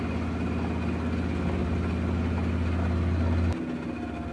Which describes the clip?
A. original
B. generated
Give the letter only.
A